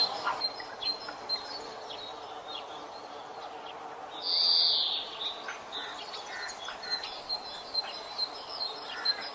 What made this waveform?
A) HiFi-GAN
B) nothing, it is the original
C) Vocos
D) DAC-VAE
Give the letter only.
B